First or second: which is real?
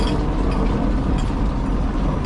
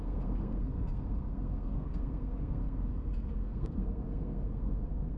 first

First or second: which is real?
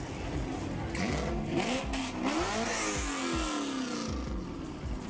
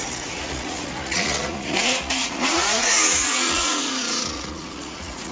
first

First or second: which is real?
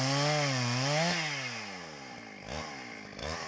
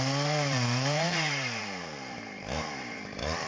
first